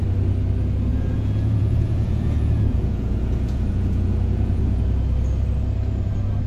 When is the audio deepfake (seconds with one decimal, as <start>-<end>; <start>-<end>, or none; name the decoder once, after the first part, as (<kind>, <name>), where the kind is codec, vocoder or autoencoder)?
0.9-4.8 (vocoder, Vocos)